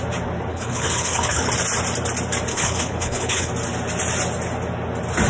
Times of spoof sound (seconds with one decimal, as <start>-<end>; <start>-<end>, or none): 0.5-1.5; 2.5-3.5